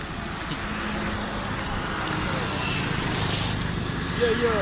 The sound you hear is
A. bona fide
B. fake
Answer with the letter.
A